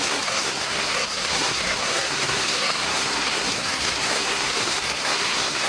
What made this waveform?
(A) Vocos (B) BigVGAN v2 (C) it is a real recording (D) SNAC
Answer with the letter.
D